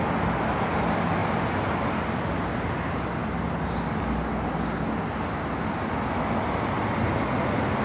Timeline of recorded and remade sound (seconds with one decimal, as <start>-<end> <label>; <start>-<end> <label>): 0.0-7.8 recorded